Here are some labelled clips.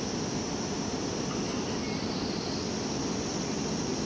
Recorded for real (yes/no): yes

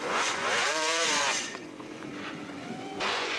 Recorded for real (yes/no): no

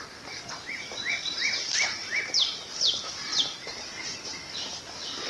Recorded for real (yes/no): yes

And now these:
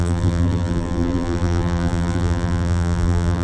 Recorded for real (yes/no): no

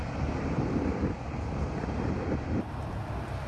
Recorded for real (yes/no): no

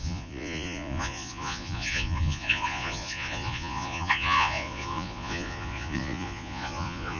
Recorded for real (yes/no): no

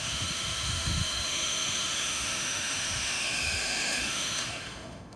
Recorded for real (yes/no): no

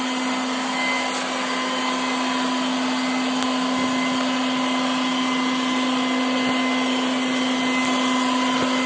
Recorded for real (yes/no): yes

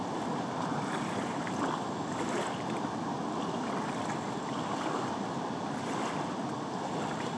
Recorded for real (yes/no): yes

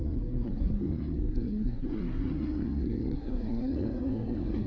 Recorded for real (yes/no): no